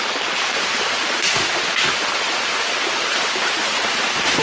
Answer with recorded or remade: recorded